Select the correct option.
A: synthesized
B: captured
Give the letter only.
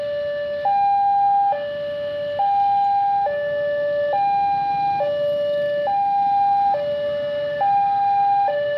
B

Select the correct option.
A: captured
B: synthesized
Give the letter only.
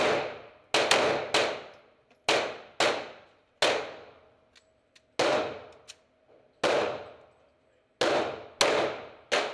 A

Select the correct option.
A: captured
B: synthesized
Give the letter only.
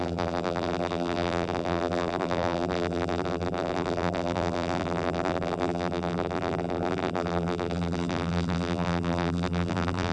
B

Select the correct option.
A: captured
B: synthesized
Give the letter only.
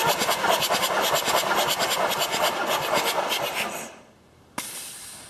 A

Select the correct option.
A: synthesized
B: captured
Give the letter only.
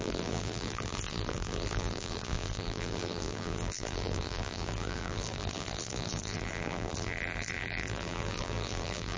A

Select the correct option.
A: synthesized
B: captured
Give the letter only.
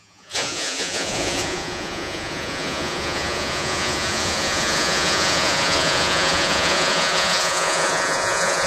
A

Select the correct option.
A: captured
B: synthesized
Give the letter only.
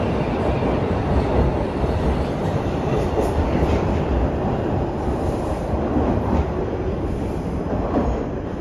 B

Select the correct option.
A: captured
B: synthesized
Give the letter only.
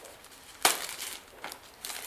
A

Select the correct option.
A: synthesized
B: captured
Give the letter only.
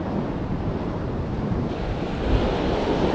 B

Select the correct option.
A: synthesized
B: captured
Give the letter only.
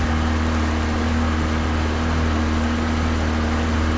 B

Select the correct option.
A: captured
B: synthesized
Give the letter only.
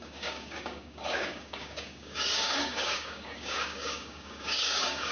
B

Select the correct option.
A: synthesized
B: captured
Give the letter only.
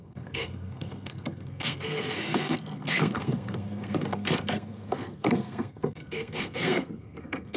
A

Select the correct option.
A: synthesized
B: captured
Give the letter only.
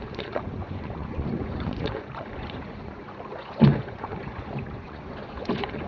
A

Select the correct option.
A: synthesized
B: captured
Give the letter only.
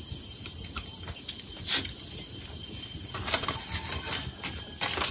B